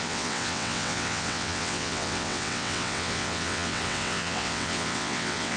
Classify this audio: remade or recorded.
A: remade